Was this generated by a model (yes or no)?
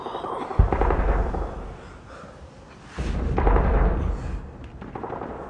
no